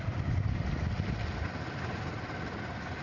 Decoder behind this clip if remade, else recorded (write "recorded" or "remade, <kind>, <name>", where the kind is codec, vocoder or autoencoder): recorded